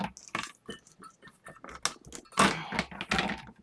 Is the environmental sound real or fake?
real